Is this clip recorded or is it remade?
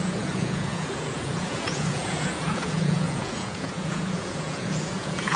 remade